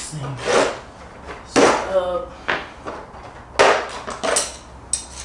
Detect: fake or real real